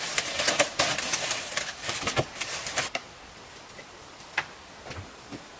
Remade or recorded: recorded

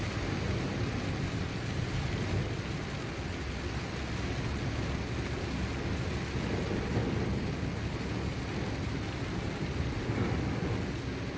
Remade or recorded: recorded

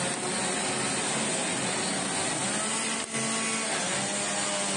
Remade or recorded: recorded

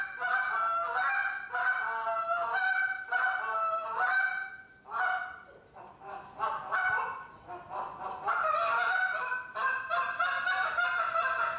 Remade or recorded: recorded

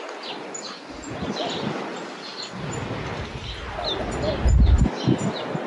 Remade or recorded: recorded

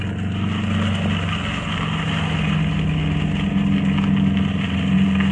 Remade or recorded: recorded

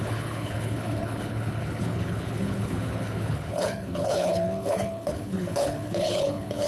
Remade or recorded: remade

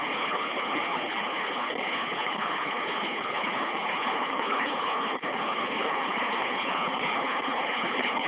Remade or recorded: remade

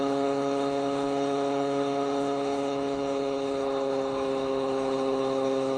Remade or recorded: remade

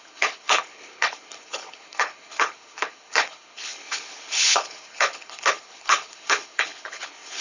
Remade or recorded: remade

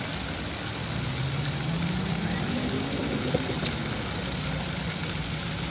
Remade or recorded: recorded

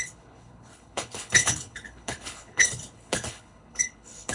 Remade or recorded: remade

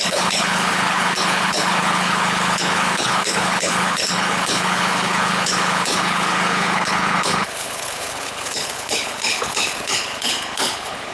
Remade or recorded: remade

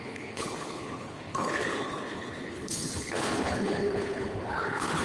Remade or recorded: remade